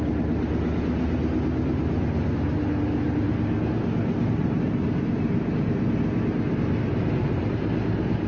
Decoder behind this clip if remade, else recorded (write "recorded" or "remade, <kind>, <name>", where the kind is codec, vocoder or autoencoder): recorded